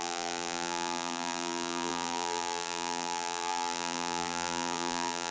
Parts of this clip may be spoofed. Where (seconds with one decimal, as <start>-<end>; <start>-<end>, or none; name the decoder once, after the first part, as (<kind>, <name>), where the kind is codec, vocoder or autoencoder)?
0.0-5.3 (vocoder, BigVGAN v2)